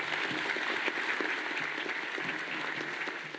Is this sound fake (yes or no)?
no